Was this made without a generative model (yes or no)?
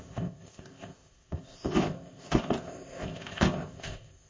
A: no